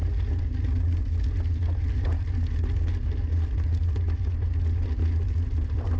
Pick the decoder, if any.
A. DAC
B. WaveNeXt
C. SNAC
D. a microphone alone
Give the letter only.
D